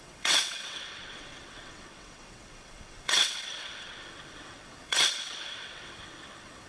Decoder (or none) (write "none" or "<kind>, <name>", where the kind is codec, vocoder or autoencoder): vocoder, WaveNeXt